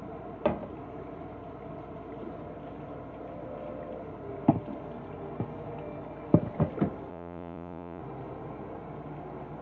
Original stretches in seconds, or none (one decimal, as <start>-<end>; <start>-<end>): 0.0-7.1; 8.0-9.6